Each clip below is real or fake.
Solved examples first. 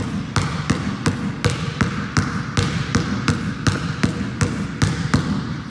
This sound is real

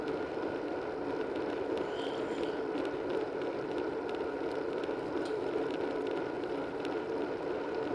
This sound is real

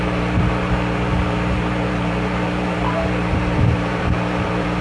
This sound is fake